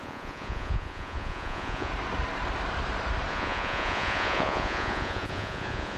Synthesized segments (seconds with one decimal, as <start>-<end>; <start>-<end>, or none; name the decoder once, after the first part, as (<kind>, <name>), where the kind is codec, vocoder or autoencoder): 0.0-1.9 (vocoder, Vocos); 3.3-6.0